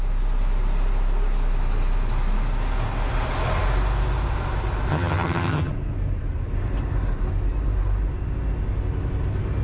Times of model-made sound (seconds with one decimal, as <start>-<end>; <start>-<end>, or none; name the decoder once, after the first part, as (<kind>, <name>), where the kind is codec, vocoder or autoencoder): 4.9-5.7 (vocoder, HiFi-GAN)